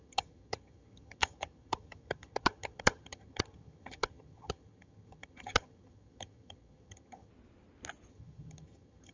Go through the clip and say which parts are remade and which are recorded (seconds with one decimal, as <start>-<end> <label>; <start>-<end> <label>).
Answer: 0.0-7.3 remade; 7.3-8.1 recorded; 8.1-9.1 remade